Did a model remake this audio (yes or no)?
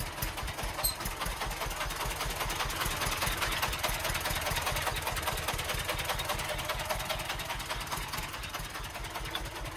no